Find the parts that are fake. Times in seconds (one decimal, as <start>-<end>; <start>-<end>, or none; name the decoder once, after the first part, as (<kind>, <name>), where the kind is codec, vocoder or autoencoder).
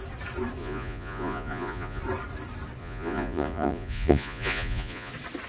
0.6-2.0 (vocoder, Vocos); 2.8-5.1